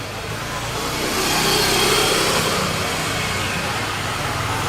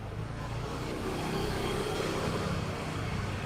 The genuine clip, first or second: first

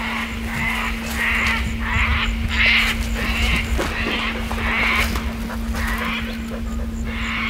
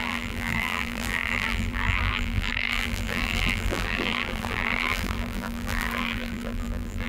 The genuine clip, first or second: first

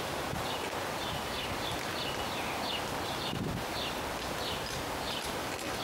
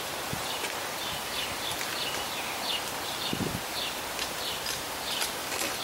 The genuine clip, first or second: first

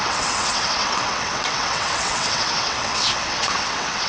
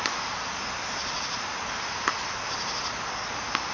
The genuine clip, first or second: second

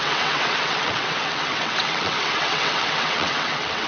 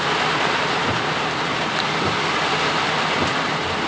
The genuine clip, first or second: second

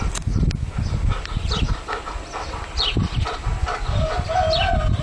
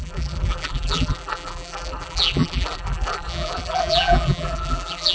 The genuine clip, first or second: first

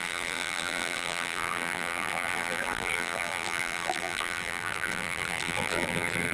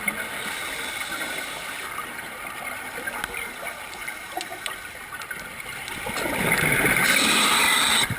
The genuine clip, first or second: second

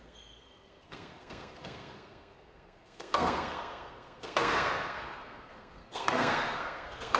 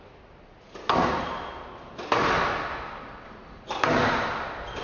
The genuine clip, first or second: second